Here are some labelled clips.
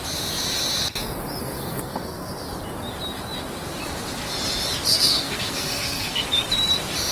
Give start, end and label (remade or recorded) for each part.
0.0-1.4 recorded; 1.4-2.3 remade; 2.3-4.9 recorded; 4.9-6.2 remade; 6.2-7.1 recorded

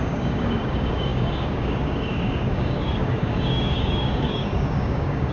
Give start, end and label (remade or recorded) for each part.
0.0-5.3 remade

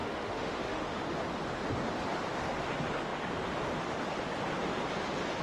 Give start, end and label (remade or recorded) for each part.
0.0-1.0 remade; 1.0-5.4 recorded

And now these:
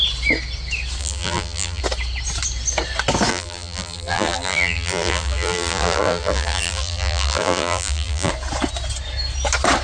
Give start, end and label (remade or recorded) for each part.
0.0-1.0 recorded; 1.0-1.8 remade; 1.8-3.3 recorded; 3.3-8.3 remade; 8.3-9.8 recorded

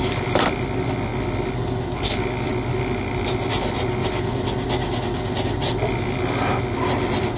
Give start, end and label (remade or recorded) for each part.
0.0-7.4 recorded

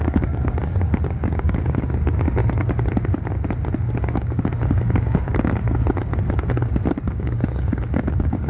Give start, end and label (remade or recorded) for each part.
0.0-2.4 remade; 2.4-4.1 recorded; 4.1-5.6 remade; 5.6-7.1 recorded; 7.1-8.5 remade